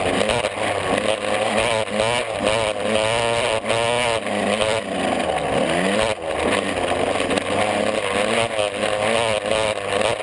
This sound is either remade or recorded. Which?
recorded